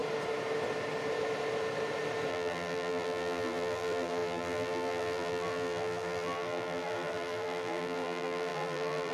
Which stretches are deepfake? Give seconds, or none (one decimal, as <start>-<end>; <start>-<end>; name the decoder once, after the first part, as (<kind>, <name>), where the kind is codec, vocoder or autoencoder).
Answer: 2.3-9.1 (vocoder, BigVGAN v2)